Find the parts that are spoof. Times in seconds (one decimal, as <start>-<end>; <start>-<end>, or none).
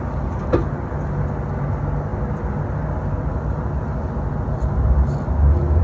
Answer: none